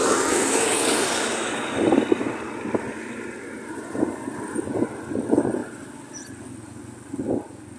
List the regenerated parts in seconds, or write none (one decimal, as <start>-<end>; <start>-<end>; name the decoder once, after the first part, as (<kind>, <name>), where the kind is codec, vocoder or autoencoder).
0.0-1.7 (codec, DAC)